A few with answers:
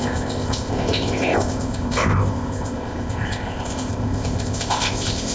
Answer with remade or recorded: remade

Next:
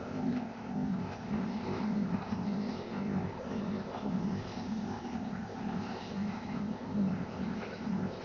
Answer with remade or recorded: remade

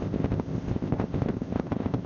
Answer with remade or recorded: remade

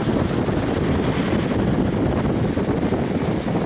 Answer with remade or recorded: recorded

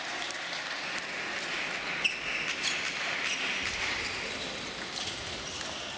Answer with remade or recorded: recorded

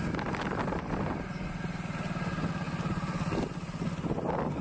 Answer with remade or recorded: recorded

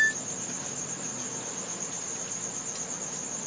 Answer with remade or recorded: recorded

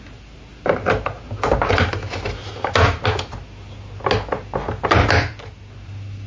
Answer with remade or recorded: recorded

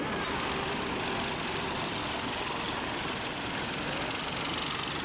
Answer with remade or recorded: recorded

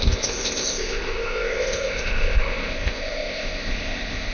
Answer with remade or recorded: remade